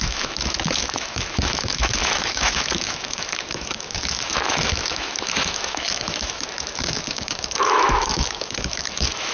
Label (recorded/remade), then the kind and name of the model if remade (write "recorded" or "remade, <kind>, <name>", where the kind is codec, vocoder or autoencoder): remade, autoencoder, DAC-VAE